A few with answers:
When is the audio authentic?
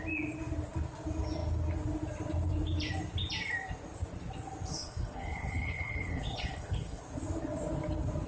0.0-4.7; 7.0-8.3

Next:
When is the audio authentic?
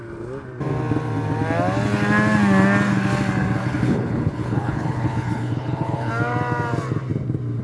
0.0-3.6; 6.1-7.6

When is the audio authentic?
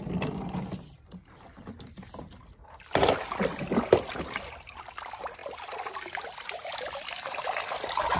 0.0-8.2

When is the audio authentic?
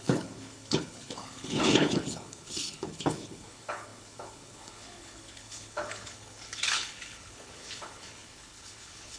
none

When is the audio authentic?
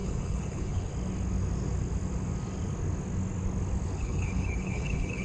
0.9-4.0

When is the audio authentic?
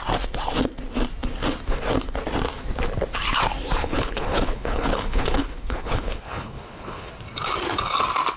0.0-3.8; 7.1-8.4